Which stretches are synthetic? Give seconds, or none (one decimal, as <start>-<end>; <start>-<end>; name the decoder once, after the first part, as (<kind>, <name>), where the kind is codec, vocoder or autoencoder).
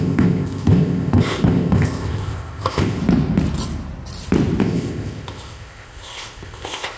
0.0-3.0 (codec, ZipCodec); 4.6-7.0